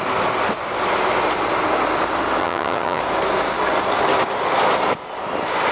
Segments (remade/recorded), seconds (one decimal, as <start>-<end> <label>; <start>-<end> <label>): 0.0-2.4 recorded; 2.4-3.0 remade; 3.0-5.7 recorded